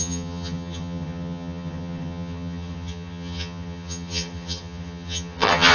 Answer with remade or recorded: remade